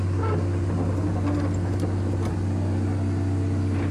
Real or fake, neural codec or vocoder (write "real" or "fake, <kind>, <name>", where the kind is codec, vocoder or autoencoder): real